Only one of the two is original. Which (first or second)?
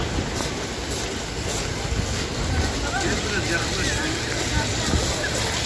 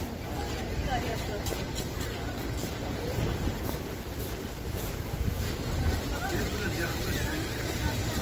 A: first